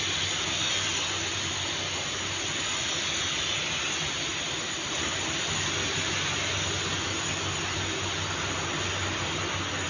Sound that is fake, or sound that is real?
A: real